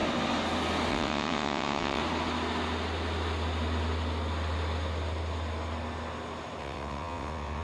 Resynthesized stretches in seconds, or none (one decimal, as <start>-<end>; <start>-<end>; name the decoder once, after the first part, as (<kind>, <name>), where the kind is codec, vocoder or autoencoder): 0.9-2.0 (vocoder, WaveNeXt); 6.6-7.6